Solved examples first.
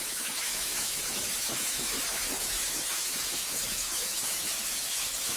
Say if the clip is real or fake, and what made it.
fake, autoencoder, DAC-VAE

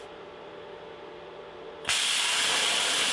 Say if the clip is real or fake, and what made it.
real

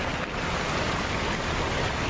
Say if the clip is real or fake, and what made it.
real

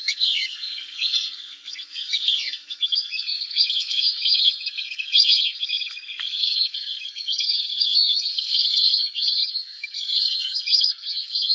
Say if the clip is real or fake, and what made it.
fake, codec, SNAC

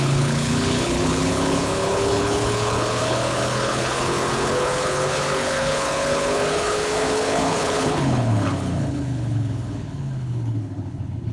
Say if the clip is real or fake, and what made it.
fake, codec, HILCodec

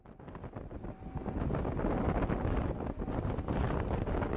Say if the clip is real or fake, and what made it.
real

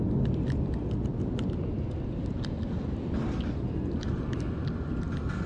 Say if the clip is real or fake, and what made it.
real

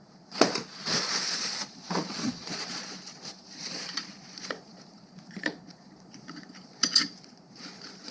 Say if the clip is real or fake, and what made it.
fake, vocoder, Vocos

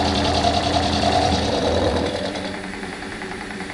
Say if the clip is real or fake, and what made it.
fake, vocoder, BigVGAN v2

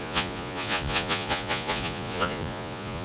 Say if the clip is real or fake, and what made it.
fake, vocoder, Vocos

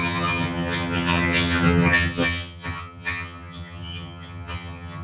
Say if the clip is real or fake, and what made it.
fake, vocoder, HiFi-GAN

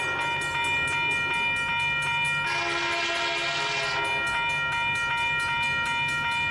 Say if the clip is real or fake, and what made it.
real